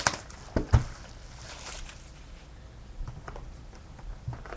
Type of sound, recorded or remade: remade